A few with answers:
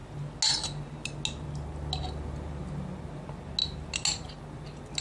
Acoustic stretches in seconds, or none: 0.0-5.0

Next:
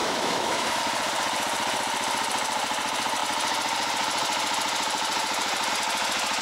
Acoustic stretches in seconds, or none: 0.8-6.4

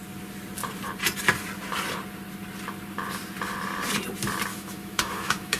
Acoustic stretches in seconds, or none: 0.0-4.5

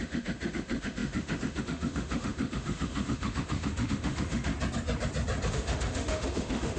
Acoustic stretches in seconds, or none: 4.5-5.5

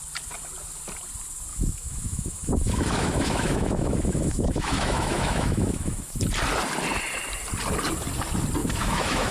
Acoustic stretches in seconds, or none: 0.0-1.5; 6.2-8.6

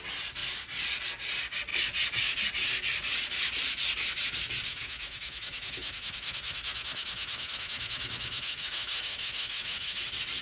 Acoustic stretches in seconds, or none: 0.0-4.7; 10.0-10.4